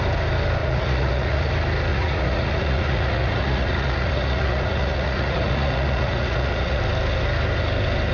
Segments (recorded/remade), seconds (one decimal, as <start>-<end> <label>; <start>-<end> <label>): 0.0-0.6 recorded; 0.6-1.5 remade; 1.5-1.9 recorded; 1.9-6.8 remade; 6.8-8.1 recorded